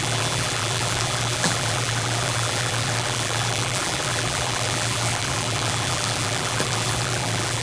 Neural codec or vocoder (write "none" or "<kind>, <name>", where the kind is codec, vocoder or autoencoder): vocoder, BigVGAN v2